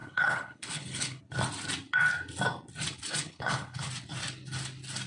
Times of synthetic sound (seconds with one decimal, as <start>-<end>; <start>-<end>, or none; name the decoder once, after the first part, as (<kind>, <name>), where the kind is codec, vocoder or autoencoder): 0.0-1.2 (codec, HILCodec); 3.2-3.9